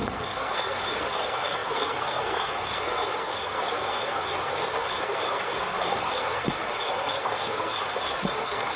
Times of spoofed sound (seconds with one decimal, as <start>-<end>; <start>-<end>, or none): 0.0-8.8